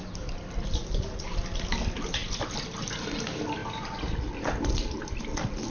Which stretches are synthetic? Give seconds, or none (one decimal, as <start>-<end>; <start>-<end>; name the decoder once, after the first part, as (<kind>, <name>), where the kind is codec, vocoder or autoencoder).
none